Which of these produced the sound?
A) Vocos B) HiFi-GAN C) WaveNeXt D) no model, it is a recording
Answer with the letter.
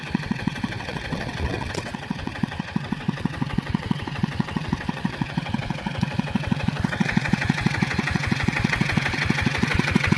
C